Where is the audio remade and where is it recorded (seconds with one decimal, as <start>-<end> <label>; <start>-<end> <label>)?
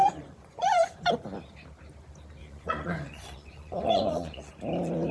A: 0.0-1.1 remade; 1.1-2.4 recorded; 2.4-4.5 remade; 4.5-5.1 recorded